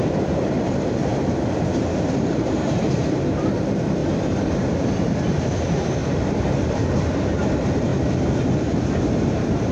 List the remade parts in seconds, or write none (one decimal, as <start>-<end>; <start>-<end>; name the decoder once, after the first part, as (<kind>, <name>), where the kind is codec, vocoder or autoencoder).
0.0-4.0 (vocoder, BigVGAN v2); 4.8-7.9; 8.8-9.7